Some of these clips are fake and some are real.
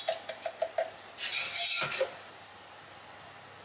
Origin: real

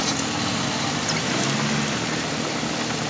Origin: real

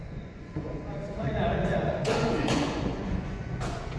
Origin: fake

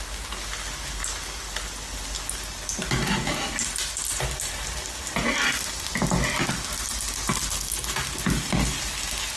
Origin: real